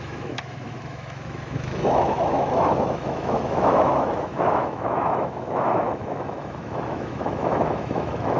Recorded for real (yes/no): no